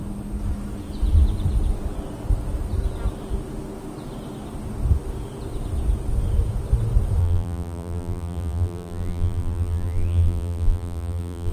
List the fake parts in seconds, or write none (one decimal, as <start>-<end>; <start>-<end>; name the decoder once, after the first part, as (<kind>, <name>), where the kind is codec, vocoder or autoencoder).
7.2-11.5 (vocoder, BigVGAN v2)